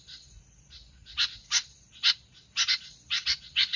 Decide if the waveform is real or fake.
fake